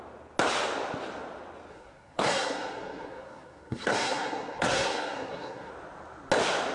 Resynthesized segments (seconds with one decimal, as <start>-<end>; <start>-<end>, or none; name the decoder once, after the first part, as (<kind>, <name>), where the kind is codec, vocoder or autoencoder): 1.7-5.7 (codec, SNAC)